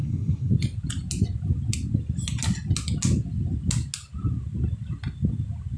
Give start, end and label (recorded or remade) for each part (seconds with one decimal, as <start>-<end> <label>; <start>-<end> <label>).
0.0-0.5 remade; 0.5-5.8 recorded